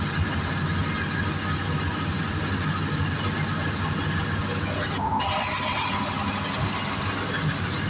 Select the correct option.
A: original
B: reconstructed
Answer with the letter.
A